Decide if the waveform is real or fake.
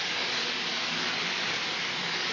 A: fake